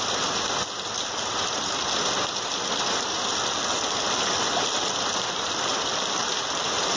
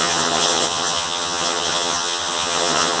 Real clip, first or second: first